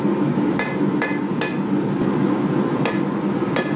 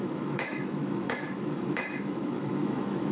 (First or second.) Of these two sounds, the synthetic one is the second